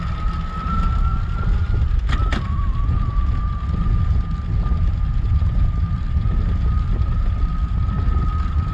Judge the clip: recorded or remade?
recorded